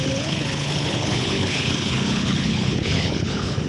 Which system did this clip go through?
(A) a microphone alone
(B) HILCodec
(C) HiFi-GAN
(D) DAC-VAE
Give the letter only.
B